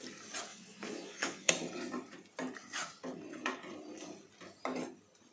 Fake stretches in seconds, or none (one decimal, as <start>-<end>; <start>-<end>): 0.5-1.5